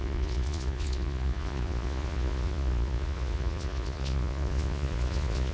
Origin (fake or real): fake